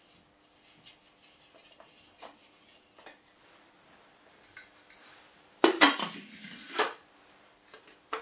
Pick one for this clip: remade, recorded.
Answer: recorded